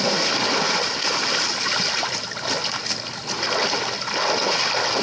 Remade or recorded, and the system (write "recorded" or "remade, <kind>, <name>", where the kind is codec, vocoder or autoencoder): recorded